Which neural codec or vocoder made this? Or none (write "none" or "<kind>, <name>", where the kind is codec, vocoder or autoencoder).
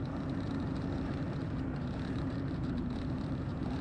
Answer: vocoder, BigVGAN v2